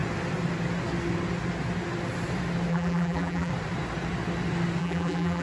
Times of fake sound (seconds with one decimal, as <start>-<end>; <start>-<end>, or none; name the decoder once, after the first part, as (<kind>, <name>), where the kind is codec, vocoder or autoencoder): 2.7-3.5 (vocoder, BigVGAN v2); 4.8-5.4